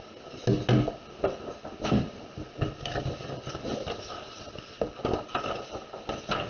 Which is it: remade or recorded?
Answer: recorded